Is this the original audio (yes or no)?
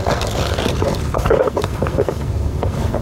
no